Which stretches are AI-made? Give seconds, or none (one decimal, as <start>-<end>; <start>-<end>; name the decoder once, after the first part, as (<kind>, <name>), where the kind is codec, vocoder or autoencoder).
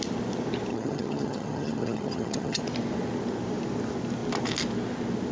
0.7-2.6 (vocoder, HiFi-GAN)